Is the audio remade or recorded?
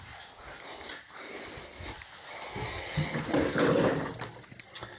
recorded